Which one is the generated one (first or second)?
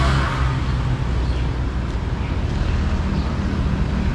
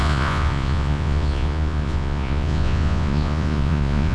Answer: second